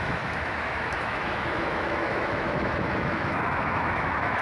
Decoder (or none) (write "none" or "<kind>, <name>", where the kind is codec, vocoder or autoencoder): autoencoder, DAC-VAE